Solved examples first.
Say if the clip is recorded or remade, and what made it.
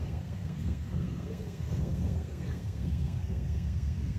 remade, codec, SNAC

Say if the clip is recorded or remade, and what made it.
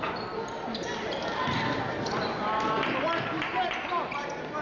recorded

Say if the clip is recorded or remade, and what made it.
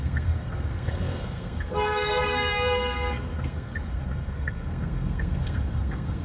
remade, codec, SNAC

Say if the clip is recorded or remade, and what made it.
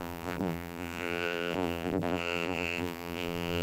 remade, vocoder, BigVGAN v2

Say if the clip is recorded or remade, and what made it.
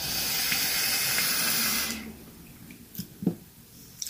remade, vocoder, BigVGAN v2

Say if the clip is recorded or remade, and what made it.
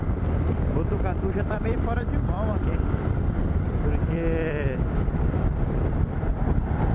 remade, vocoder, BigVGAN v2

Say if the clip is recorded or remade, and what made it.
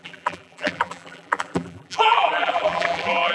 remade, vocoder, BigVGAN v2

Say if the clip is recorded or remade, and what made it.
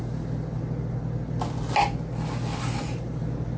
recorded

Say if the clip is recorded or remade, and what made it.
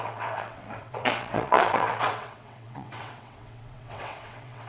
remade, vocoder, WaveNeXt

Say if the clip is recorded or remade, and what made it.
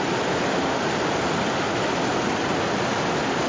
recorded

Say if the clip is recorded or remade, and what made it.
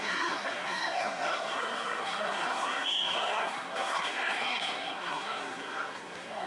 remade, codec, SNAC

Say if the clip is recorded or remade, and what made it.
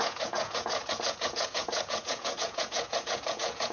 remade, vocoder, Vocos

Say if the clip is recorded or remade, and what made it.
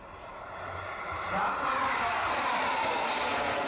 recorded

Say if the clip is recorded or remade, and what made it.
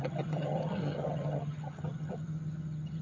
remade, vocoder, HiFi-GAN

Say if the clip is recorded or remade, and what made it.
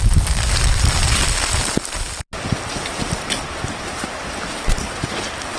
recorded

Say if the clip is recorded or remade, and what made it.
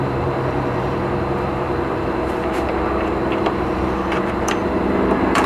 remade, vocoder, BigVGAN v2